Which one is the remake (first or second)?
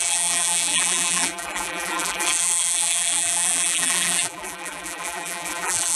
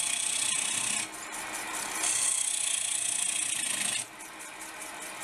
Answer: first